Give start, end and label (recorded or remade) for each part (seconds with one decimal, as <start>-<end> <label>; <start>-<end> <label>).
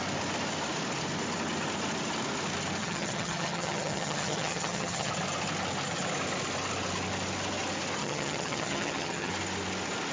0.0-2.8 recorded; 2.8-5.1 remade; 5.1-8.0 recorded; 8.0-9.3 remade; 9.3-10.1 recorded